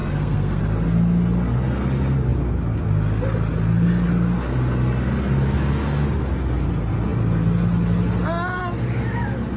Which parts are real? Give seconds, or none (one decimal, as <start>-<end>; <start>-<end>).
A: 0.6-9.6